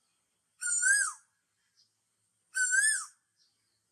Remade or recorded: recorded